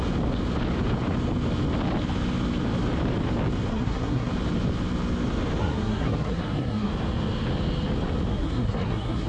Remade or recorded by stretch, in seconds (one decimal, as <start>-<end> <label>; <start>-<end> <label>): 0.0-3.7 recorded; 3.7-4.3 remade; 4.3-5.6 recorded; 5.6-6.9 remade; 6.9-8.3 recorded; 8.3-9.3 remade

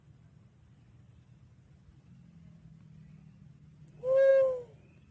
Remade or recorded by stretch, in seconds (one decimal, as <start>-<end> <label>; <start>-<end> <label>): 0.0-5.1 recorded

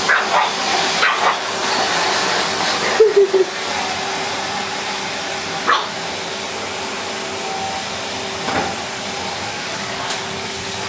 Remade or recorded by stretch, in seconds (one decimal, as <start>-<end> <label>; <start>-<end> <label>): 0.0-9.5 recorded; 9.5-10.9 remade

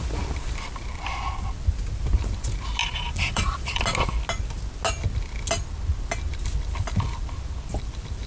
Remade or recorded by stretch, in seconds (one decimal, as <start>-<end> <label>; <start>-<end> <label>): 0.0-2.8 recorded; 2.8-3.8 remade; 3.8-8.3 recorded

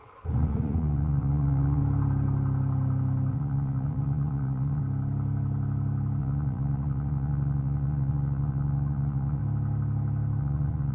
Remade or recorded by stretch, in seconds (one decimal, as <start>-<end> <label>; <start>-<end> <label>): 0.0-1.8 remade; 1.8-3.3 recorded; 3.3-4.8 remade; 4.8-6.2 recorded; 6.2-9.4 remade; 9.4-10.4 recorded; 10.4-10.9 remade

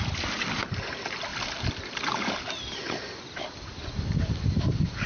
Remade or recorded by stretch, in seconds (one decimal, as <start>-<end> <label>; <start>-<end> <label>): 0.0-5.1 recorded

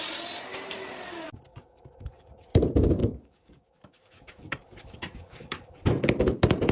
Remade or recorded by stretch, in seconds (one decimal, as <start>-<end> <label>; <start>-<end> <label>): 0.0-1.5 recorded; 1.5-2.3 remade; 2.3-3.0 recorded; 3.0-5.9 remade; 5.9-6.7 recorded